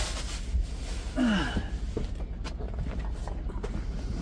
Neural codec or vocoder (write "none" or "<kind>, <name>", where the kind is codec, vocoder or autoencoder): none